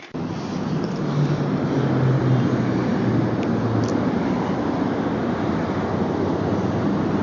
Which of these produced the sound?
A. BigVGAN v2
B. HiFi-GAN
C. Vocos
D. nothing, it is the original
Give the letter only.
D